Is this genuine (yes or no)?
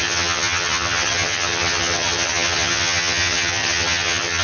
no